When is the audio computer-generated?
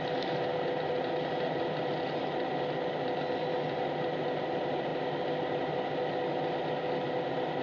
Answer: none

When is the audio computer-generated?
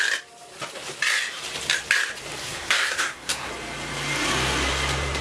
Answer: 2.4-3.5 (codec, SNAC)